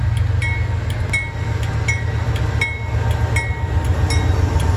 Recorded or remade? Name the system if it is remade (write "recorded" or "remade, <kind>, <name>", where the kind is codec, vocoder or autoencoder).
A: recorded